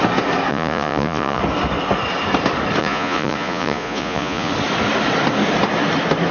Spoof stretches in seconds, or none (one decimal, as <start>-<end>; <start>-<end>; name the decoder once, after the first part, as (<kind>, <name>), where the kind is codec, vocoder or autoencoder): 0.5-1.4 (vocoder, Vocos); 2.8-4.5